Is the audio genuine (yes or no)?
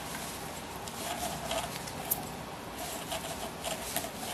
yes